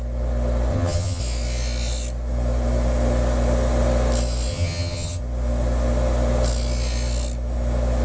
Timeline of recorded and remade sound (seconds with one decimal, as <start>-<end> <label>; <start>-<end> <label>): 0.0-0.7 recorded; 0.7-1.2 remade; 1.2-4.5 recorded; 4.5-5.2 remade; 5.2-8.0 recorded